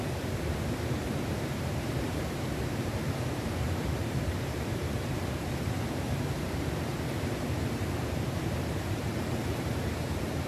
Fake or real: fake